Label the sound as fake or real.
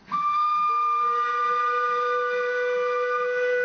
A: real